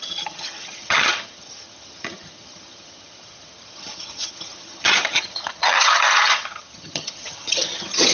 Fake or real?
fake